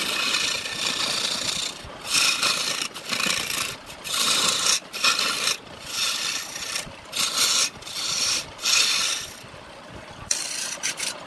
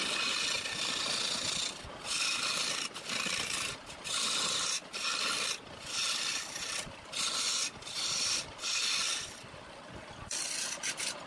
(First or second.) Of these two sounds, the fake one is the first